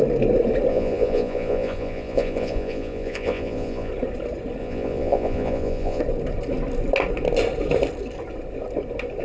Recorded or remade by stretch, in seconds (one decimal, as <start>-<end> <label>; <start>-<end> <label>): 0.0-0.7 recorded; 0.7-3.9 remade; 3.9-4.6 recorded; 4.6-6.0 remade; 6.0-9.2 recorded